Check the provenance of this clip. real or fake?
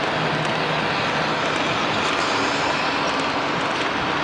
real